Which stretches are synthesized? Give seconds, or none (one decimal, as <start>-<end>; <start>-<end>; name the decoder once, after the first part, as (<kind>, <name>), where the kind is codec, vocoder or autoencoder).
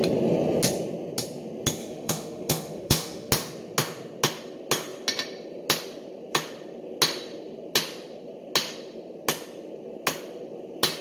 1.8-3.3 (autoencoder, DAC-VAE)